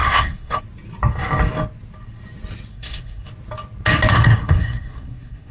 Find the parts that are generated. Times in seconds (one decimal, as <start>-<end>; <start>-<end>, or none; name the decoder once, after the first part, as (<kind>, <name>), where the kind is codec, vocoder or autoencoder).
0.0-0.6 (codec, SNAC); 2.7-3.3; 4.1-5.5